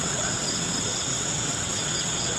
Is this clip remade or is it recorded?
remade